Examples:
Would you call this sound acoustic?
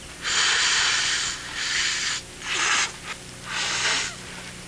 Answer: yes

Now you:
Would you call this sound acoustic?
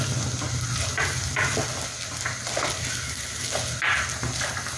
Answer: yes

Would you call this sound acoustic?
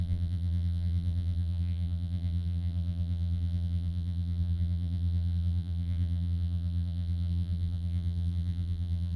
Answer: no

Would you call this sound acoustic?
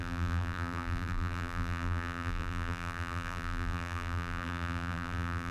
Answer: no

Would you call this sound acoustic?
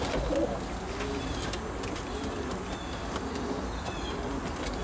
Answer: yes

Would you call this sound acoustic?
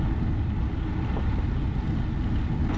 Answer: yes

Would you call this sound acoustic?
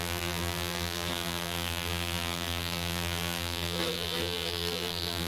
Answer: no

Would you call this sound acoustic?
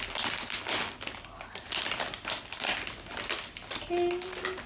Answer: yes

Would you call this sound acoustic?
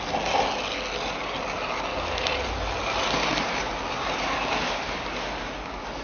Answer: yes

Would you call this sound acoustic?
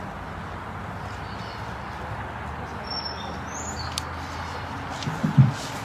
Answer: yes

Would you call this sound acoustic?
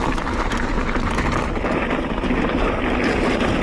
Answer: yes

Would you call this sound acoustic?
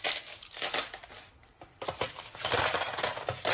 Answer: yes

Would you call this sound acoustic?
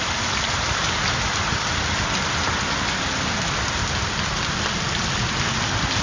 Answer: yes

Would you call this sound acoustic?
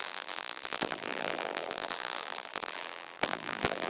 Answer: no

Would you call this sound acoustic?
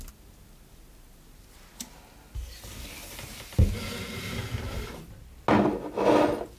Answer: yes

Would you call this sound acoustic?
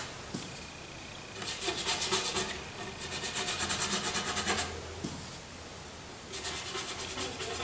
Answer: yes